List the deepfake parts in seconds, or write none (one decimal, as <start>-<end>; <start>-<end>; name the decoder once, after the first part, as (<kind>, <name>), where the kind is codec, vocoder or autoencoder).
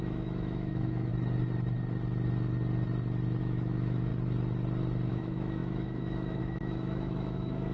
0.0-1.1 (autoencoder, DAC-VAE); 3.4-4.1; 5.1-7.7